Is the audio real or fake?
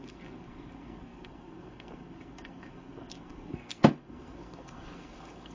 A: fake